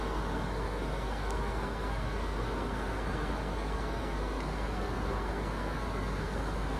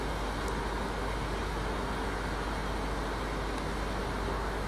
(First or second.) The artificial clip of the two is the first